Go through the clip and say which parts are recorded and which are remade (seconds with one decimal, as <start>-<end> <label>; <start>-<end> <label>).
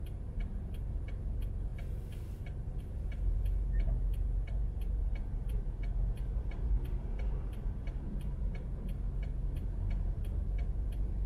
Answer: 0.0-11.3 remade